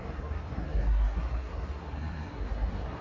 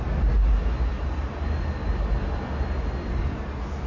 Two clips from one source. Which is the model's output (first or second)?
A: first